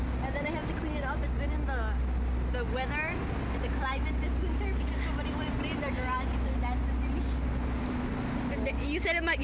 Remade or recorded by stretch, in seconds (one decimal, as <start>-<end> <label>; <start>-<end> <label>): 0.0-9.4 recorded